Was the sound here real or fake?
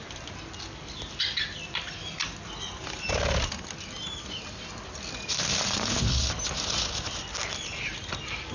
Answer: real